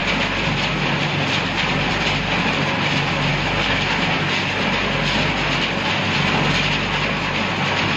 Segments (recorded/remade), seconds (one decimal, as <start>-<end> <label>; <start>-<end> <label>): 0.0-8.0 recorded